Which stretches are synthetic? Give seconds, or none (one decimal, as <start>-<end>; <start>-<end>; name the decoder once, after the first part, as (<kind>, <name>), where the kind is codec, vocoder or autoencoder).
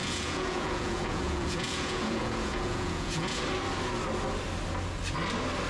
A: 0.0-3.4 (vocoder, Vocos)